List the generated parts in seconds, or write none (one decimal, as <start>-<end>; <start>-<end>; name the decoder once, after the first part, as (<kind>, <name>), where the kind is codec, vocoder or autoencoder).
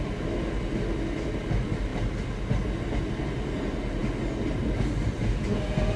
none